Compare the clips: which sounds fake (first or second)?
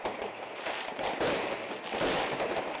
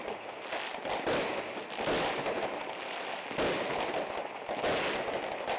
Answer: first